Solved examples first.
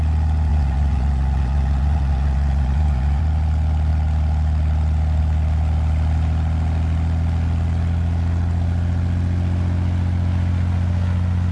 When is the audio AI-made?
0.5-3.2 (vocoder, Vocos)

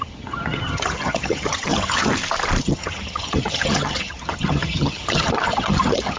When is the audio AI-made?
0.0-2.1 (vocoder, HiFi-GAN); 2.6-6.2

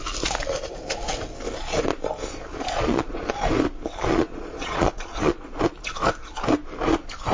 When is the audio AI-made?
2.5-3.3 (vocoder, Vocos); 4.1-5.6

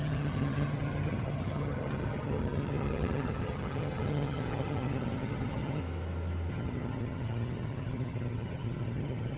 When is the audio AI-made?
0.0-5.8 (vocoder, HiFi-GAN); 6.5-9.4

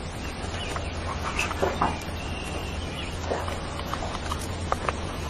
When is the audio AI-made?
2.6-3.1 (vocoder, Vocos); 3.9-5.3

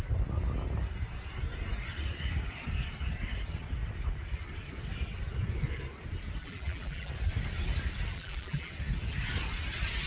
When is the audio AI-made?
6.4-7.1 (vocoder, BigVGAN v2); 8.1-8.7

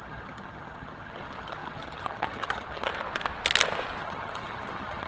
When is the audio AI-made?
0.0-2.9 (vocoder, HiFi-GAN); 4.0-5.1

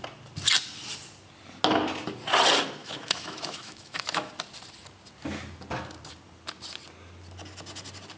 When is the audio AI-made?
2.8-4.3 (autoencoder, DAC-VAE)